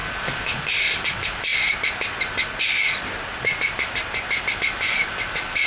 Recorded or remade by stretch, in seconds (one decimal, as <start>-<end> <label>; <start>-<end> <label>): 0.0-1.5 remade; 1.5-4.5 recorded; 4.5-5.7 remade